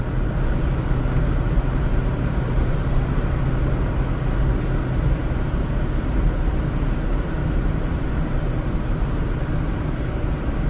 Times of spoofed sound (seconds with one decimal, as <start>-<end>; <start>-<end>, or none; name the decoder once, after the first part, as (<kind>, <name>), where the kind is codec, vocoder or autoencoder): 1.9-3.4 (vocoder, BigVGAN v2); 5.2-6.4; 7.4-8.4